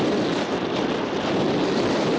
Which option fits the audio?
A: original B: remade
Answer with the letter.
A